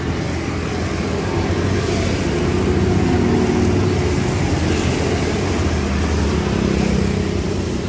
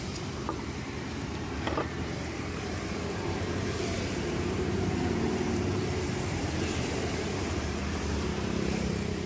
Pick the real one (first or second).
first